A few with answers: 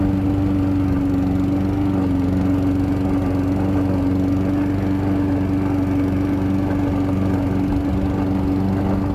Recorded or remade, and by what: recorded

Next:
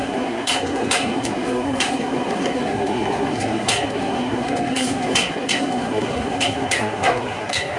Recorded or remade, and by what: remade, codec, SNAC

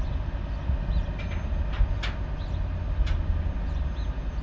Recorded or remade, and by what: recorded